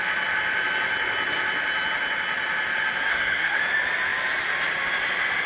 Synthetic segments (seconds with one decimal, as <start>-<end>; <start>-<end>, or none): 3.1-3.6

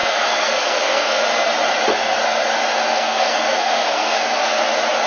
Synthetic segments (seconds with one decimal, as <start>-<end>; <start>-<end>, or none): 0.0-1.2; 2.9-4.6

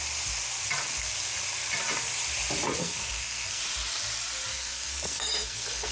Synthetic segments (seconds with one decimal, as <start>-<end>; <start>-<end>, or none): 2.8-3.6; 4.5-5.9